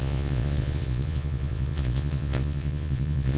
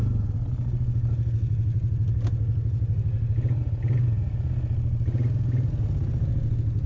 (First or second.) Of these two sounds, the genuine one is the second